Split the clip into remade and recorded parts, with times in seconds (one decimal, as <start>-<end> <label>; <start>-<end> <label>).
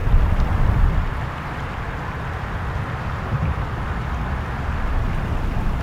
0.0-1.7 remade; 1.7-5.8 recorded